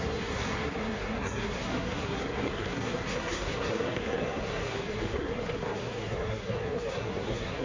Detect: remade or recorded remade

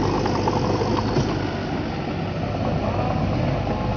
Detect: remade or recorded recorded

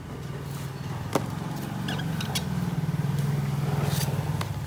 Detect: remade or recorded recorded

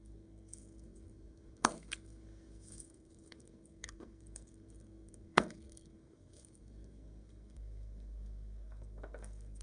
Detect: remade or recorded remade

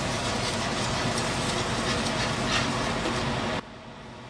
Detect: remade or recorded recorded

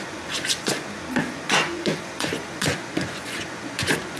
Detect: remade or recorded remade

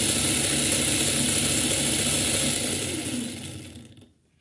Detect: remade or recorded recorded